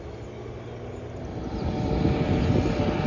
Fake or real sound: real